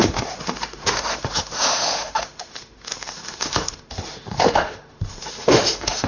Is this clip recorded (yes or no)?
no